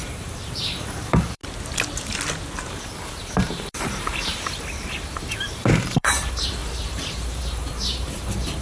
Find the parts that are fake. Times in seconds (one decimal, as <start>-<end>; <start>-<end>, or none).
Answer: 0.0-1.4; 2.7-8.6